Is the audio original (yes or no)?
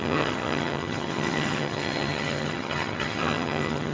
no